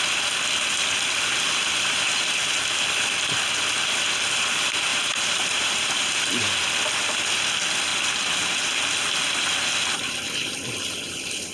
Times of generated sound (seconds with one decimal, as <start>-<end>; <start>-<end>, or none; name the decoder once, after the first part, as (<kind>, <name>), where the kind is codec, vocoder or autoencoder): 4.9-6.5 (vocoder, BigVGAN v2)